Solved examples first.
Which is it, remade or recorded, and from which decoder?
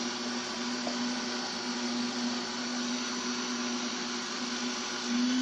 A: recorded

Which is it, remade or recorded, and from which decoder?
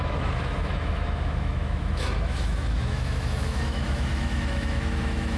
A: remade, autoencoder, DAC-VAE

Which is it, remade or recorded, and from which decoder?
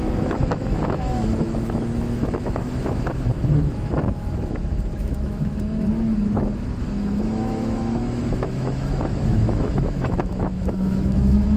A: remade, autoencoder, DAC-VAE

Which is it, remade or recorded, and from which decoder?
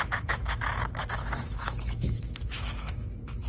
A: remade, autoencoder, DAC-VAE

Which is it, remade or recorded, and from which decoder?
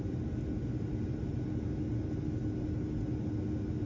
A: recorded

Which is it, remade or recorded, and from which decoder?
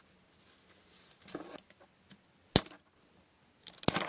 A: recorded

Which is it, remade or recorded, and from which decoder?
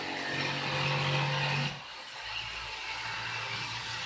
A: recorded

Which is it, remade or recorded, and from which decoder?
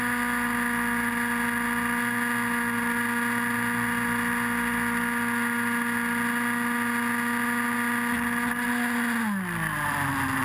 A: recorded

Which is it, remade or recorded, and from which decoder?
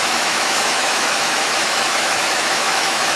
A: remade, autoencoder, DAC-VAE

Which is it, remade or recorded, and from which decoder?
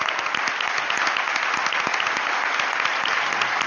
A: recorded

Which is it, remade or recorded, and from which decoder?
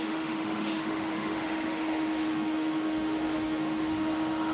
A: remade, autoencoder, DAC-VAE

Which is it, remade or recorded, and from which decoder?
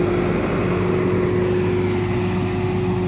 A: recorded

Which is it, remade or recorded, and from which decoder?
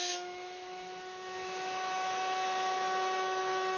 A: remade, autoencoder, DAC-VAE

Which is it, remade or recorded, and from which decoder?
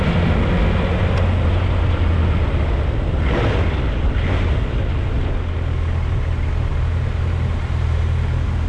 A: recorded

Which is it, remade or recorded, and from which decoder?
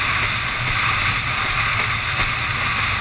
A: recorded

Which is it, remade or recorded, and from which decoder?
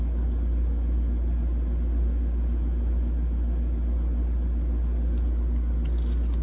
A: recorded